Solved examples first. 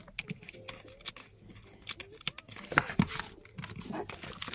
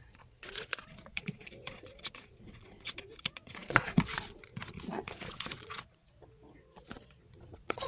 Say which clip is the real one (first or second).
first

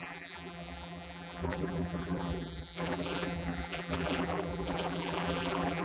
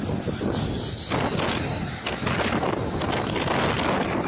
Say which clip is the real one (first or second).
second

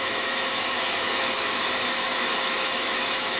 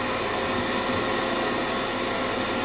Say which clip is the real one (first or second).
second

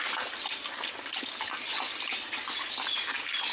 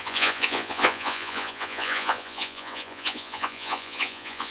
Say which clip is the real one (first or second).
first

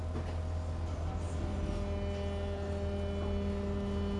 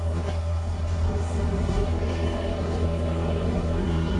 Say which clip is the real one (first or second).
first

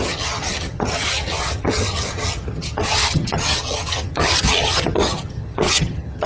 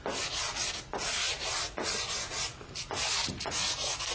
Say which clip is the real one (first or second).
second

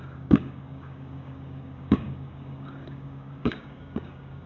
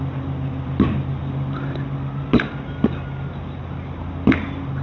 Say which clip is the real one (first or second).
second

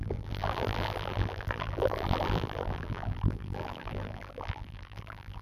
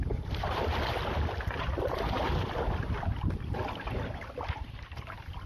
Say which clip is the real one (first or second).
second